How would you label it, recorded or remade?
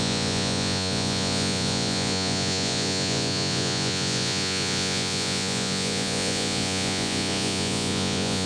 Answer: remade